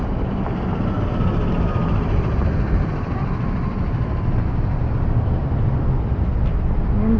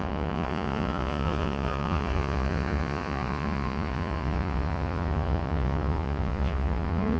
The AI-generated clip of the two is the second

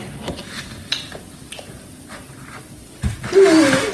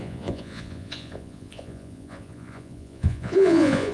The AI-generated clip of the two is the second